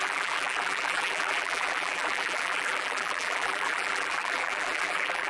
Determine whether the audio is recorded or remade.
remade